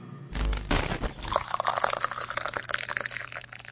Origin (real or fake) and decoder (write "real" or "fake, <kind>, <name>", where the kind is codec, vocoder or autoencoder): real